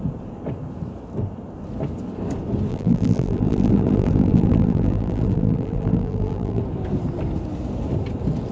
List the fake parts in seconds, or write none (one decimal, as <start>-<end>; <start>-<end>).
2.7-6.6